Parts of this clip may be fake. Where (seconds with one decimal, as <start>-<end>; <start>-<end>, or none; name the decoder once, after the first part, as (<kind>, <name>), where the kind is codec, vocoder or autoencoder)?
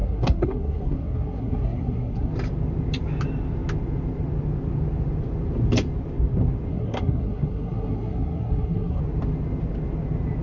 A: 0.0-2.3 (codec, SNAC); 6.7-9.0